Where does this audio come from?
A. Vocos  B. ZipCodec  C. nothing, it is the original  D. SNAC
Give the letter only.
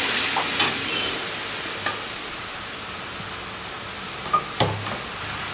C